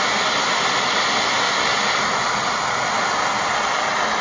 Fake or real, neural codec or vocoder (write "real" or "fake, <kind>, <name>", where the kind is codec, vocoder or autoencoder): real